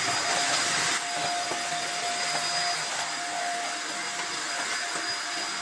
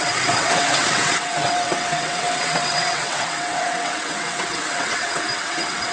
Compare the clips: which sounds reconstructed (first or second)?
second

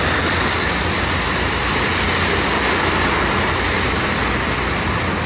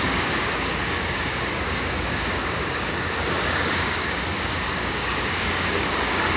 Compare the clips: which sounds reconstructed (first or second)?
second